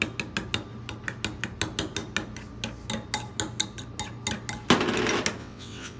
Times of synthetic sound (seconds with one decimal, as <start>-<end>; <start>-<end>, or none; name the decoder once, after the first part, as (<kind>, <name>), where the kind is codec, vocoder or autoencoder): 5.4-6.0 (vocoder, WaveNeXt)